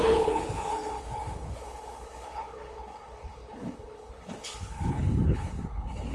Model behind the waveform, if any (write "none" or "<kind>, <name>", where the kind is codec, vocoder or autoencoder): codec, HILCodec